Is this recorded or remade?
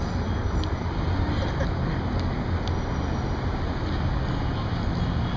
recorded